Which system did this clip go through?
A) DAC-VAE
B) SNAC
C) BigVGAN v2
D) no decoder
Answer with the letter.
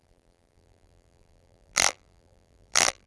C